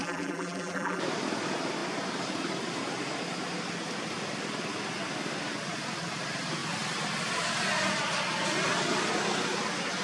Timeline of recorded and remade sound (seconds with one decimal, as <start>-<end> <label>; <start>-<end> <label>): 0.0-1.0 remade; 1.0-10.0 recorded